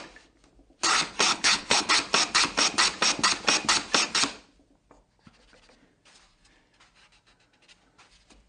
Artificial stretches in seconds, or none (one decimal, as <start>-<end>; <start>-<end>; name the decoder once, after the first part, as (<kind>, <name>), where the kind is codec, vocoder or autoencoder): 1.3-1.9 (codec, HILCodec)